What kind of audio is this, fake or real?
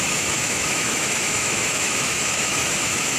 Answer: fake